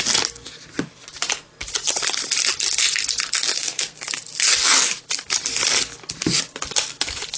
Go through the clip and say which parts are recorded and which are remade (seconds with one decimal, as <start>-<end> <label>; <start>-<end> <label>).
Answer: 0.0-3.5 recorded; 3.5-4.1 remade; 4.1-7.4 recorded